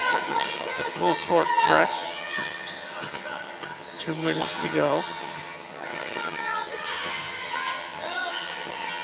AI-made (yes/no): yes